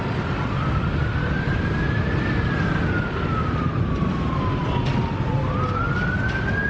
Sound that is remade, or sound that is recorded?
recorded